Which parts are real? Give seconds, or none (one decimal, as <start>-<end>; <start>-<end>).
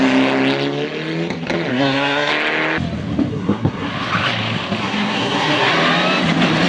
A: 0.0-1.7; 2.3-3.3; 3.9-4.8; 5.7-6.7